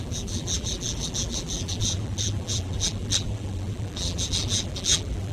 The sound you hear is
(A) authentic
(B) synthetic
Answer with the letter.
B